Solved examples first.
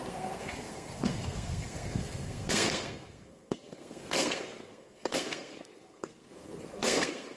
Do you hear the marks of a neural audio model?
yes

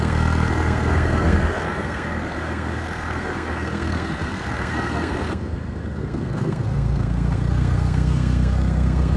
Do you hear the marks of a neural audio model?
yes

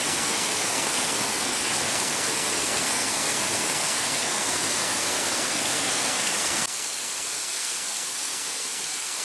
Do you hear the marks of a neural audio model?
yes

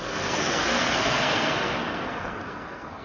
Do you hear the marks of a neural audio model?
yes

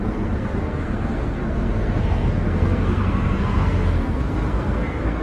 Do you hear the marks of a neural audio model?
yes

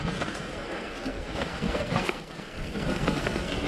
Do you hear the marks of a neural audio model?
yes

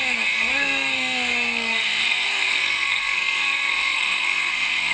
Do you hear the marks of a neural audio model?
yes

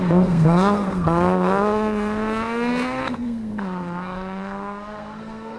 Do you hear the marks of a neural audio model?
yes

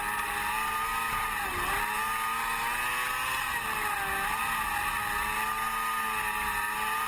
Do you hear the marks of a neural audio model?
no